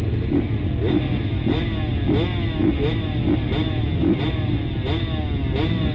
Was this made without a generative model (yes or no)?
yes